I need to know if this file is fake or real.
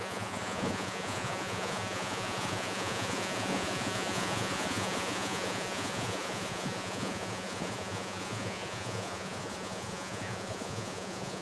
fake